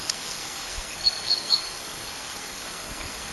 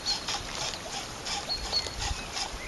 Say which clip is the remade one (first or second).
first